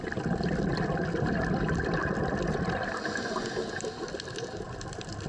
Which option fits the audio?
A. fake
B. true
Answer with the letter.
B